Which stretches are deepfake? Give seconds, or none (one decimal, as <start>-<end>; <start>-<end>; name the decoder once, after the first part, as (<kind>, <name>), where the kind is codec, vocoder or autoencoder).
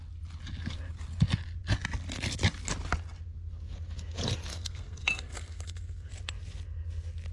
4.5-6.1 (codec, SNAC)